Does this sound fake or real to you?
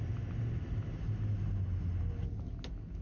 real